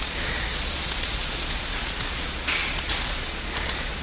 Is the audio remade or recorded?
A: remade